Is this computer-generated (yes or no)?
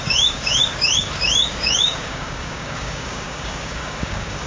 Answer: yes